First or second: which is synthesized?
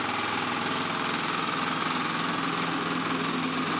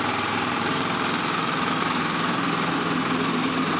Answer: second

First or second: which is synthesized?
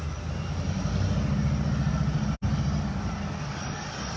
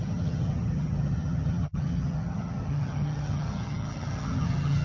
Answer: second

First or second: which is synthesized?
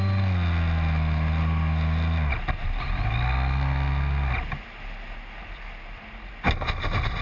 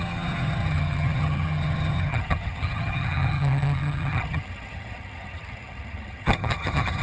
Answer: second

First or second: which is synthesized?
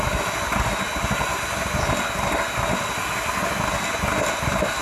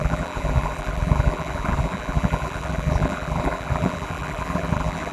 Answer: second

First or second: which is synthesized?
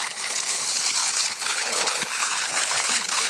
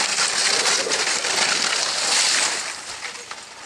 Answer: first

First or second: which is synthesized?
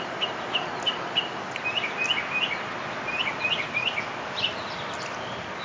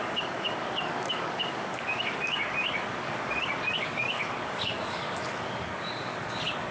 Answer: second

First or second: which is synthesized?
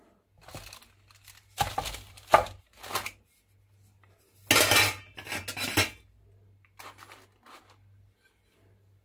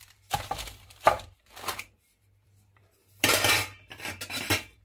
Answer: second